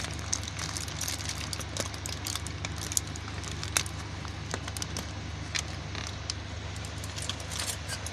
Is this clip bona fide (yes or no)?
yes